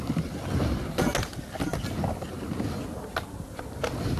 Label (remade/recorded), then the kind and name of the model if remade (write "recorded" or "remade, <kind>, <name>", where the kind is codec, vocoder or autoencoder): recorded